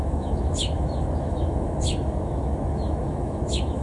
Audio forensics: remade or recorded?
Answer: remade